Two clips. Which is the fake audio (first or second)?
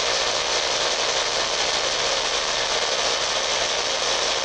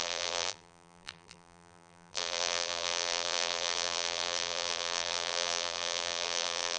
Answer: second